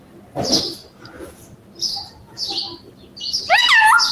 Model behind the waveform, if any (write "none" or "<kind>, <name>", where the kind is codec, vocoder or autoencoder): none